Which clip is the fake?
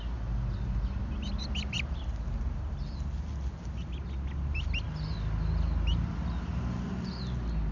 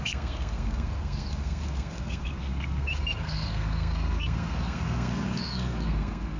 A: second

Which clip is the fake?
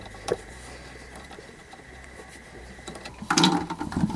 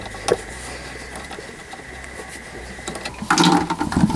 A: first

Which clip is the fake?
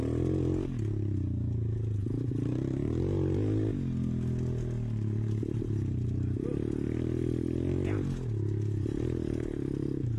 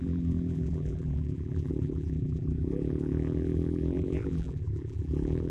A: second